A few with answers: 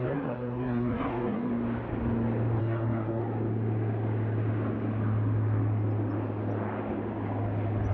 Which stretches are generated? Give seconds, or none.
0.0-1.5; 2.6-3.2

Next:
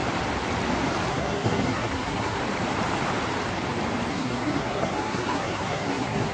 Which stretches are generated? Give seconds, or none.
1.1-2.4; 4.1-6.3